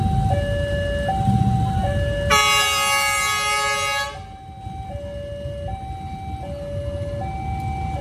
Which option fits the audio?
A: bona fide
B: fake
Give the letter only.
A